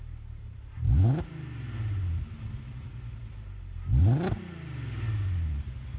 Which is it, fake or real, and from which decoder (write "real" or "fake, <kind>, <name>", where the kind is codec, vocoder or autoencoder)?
real